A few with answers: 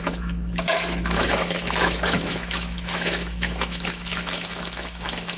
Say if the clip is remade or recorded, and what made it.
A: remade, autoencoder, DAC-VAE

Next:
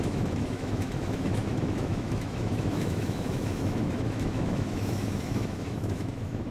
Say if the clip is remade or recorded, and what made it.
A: remade, autoencoder, DAC-VAE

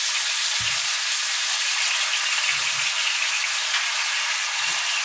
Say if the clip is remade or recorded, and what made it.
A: recorded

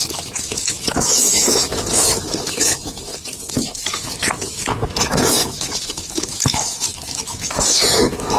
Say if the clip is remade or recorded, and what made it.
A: remade, autoencoder, DAC-VAE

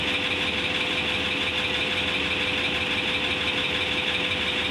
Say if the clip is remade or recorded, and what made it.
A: recorded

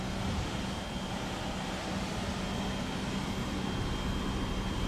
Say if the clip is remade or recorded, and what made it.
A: recorded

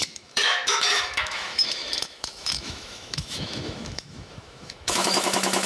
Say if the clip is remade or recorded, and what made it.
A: remade, autoencoder, DAC-VAE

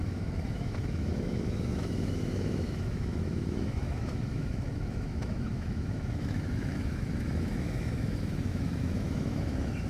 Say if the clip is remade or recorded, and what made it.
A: remade, autoencoder, DAC-VAE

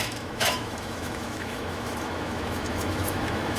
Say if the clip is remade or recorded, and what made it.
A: remade, autoencoder, DAC-VAE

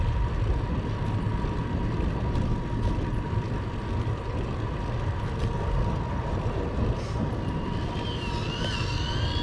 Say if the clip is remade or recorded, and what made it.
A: recorded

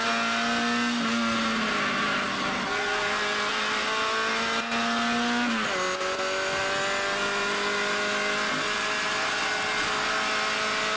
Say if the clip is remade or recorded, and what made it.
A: recorded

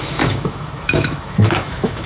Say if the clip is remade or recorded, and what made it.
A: remade, autoencoder, DAC-VAE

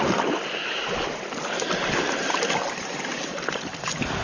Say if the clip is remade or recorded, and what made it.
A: recorded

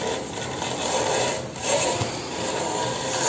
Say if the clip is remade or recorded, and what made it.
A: recorded